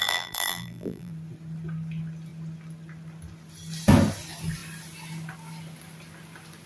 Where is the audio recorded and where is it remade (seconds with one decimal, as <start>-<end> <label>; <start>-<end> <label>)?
0.0-1.1 remade; 1.1-6.7 recorded